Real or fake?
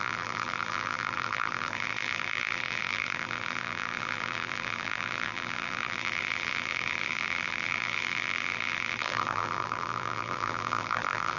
fake